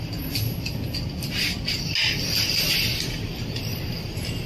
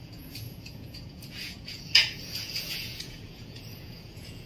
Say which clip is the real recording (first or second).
first